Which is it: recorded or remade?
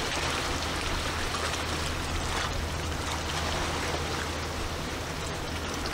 recorded